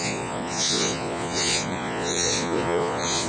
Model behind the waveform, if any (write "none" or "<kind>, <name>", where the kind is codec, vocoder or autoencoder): vocoder, Vocos